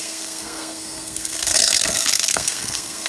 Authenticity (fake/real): fake